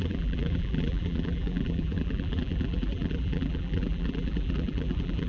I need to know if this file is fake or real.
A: fake